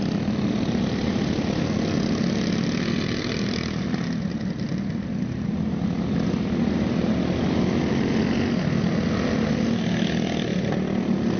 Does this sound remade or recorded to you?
recorded